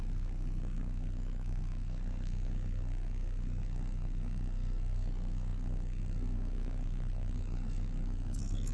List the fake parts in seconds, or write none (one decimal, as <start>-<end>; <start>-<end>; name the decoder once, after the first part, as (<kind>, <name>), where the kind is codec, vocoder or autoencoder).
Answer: 0.0-8.7 (codec, SNAC)

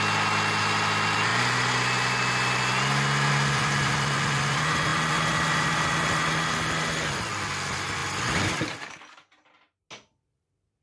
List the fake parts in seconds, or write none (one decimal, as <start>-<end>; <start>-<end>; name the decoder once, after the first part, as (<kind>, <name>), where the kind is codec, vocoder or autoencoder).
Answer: none

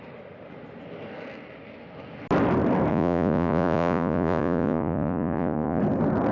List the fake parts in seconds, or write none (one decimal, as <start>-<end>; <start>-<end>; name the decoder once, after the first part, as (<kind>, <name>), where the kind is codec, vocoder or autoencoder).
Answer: 2.9-5.8 (vocoder, Vocos)

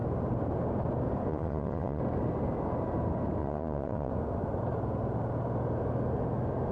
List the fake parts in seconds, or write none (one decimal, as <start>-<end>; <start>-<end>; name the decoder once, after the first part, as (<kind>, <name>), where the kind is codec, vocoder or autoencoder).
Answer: 1.3-2.0 (vocoder, Vocos); 3.4-4.1

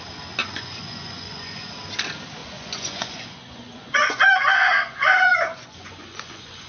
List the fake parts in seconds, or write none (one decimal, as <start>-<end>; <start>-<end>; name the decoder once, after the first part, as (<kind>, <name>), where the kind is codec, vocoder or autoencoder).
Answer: 0.4-1.7 (vocoder, Vocos); 2.4-6.7

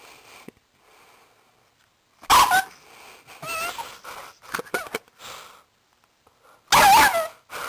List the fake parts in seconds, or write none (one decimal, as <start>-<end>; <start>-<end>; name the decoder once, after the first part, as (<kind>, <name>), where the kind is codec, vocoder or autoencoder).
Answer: none